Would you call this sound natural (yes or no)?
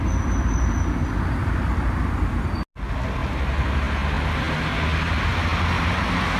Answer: yes